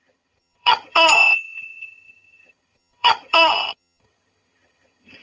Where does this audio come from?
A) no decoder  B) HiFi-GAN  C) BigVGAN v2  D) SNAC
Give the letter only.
B